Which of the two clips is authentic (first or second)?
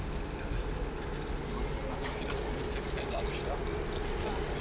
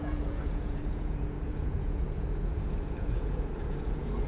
first